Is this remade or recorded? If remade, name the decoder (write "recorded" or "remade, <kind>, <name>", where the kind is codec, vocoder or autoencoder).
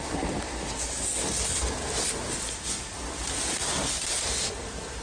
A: recorded